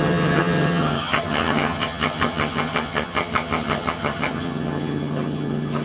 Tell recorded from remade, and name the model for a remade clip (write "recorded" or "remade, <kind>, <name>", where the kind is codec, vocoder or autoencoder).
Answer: remade, vocoder, HiFi-GAN